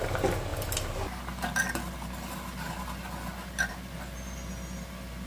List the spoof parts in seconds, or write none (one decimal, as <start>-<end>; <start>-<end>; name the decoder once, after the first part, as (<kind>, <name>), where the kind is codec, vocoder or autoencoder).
none